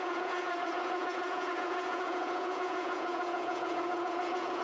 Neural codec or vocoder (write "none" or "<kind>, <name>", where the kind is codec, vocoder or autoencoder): vocoder, Vocos